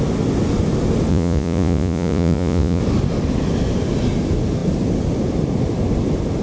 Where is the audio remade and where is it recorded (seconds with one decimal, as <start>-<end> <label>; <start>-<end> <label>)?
0.0-1.1 recorded; 1.1-2.8 remade; 2.8-6.4 recorded